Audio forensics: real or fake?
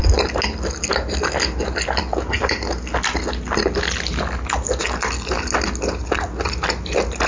real